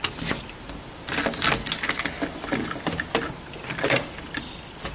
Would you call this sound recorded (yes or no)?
yes